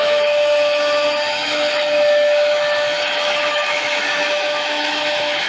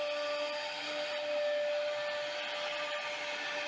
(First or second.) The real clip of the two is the second